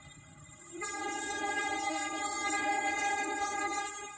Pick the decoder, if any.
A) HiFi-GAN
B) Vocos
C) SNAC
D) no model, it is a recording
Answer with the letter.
A